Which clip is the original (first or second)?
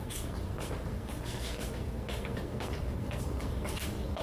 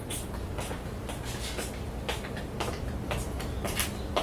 second